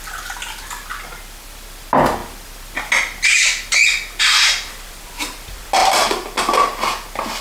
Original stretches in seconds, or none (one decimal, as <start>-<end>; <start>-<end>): 0.0-7.4